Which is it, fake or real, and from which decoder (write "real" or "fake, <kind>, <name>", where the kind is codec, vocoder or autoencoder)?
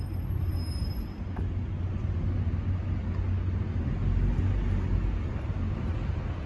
real